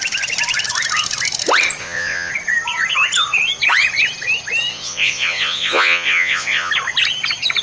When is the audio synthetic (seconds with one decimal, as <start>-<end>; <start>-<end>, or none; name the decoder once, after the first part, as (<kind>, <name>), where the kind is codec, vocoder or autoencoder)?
1.8-2.3 (vocoder, Vocos); 4.7-6.7